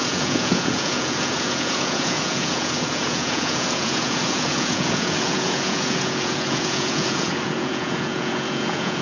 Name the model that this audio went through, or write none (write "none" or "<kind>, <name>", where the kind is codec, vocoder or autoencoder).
vocoder, Vocos